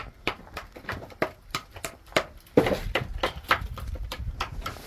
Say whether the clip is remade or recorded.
recorded